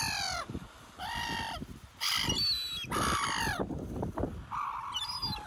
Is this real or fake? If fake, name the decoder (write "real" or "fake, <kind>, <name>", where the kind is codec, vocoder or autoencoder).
real